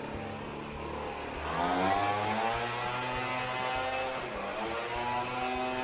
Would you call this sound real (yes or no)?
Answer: yes